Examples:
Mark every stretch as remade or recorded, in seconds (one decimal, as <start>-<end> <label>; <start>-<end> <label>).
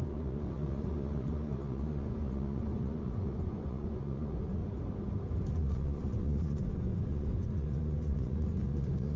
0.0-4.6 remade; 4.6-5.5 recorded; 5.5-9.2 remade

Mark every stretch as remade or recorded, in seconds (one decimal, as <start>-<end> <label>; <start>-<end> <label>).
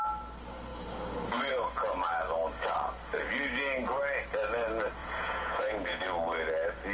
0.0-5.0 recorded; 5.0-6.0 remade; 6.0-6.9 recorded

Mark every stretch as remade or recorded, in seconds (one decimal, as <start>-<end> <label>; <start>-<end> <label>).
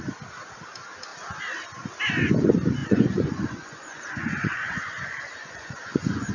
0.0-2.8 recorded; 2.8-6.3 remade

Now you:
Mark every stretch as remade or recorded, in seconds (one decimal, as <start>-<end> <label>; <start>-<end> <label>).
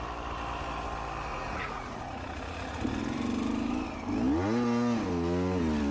0.0-1.3 recorded; 1.3-2.8 remade; 2.8-5.9 recorded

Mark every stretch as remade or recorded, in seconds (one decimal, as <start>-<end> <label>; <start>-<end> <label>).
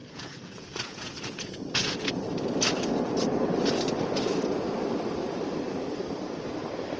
0.0-2.1 remade; 2.1-7.0 recorded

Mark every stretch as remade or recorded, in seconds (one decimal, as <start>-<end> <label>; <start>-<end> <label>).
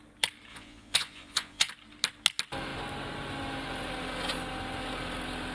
0.0-0.5 recorded; 0.5-1.7 remade; 1.7-5.5 recorded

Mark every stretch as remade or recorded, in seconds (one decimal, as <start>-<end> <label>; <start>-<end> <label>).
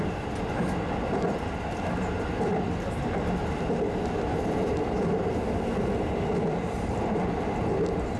0.0-8.2 recorded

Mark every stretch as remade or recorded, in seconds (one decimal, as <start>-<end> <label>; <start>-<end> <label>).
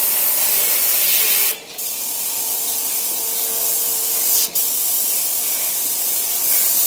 0.0-6.9 recorded